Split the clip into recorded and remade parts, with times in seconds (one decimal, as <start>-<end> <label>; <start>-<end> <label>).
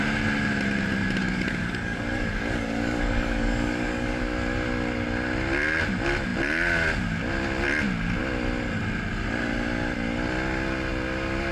0.0-1.2 recorded; 1.2-4.2 remade; 4.2-11.5 recorded